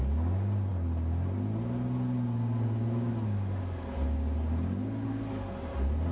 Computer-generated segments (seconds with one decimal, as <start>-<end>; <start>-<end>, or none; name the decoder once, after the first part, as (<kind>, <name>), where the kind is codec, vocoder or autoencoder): none

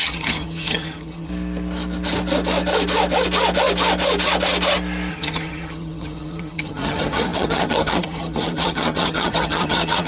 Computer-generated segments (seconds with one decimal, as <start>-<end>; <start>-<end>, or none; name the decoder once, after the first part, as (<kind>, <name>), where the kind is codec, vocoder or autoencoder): 0.0-1.3 (vocoder, HiFi-GAN); 5.1-10.1

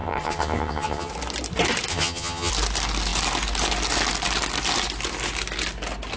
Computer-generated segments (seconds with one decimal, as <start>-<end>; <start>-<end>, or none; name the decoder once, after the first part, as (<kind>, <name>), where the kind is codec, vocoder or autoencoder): 0.0-1.1 (vocoder, HiFi-GAN); 1.9-2.5